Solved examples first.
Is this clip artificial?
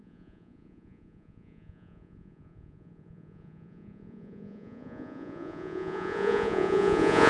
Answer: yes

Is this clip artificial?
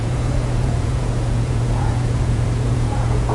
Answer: yes